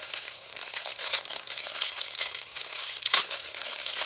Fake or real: fake